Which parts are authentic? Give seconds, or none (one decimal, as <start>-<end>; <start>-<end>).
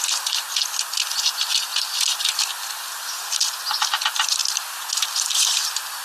0.0-1.7; 2.4-6.0